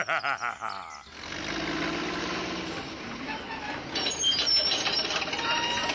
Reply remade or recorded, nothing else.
recorded